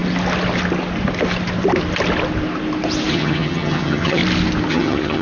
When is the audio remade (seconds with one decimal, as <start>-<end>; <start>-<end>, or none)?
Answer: 3.1-4.2; 4.7-5.2